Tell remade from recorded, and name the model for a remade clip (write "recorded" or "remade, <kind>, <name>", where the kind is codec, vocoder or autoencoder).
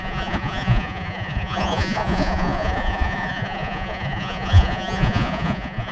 remade, vocoder, Vocos